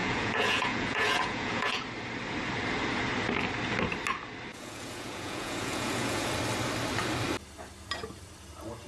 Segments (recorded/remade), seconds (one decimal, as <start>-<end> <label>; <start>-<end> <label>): 0.0-1.8 remade; 1.8-4.5 recorded; 4.5-6.3 remade; 6.3-8.9 recorded